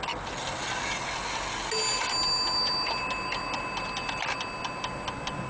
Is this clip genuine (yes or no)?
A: yes